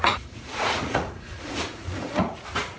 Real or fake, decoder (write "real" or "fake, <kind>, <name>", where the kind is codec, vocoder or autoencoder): fake, vocoder, Vocos